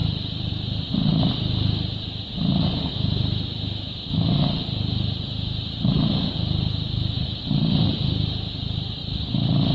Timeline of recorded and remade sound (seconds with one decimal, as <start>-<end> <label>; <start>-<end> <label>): 0.0-9.0 recorded; 9.0-9.7 remade